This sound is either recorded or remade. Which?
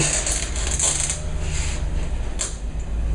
recorded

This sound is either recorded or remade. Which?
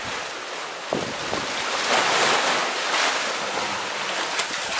recorded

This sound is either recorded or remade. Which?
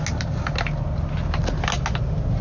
recorded